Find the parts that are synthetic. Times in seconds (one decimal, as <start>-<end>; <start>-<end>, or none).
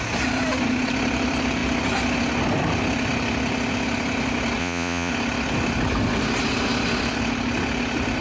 4.6-5.1